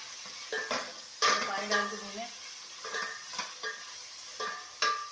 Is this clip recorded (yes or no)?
yes